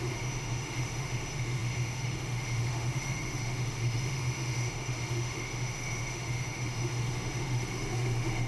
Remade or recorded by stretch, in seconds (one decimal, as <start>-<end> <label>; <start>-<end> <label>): 0.0-8.5 remade